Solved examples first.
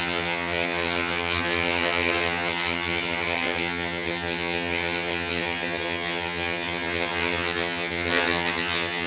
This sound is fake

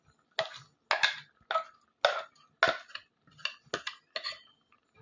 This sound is real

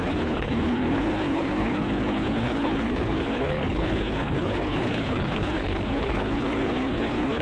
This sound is fake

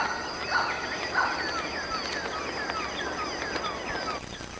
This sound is real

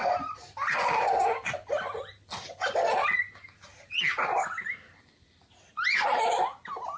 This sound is real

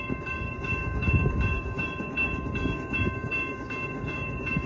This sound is fake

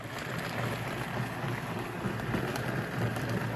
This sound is real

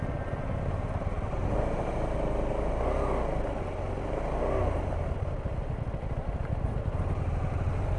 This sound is real